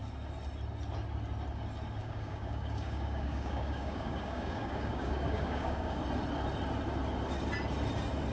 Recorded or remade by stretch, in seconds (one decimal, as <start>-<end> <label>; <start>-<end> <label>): 0.0-2.0 recorded; 2.0-6.0 remade; 6.0-8.3 recorded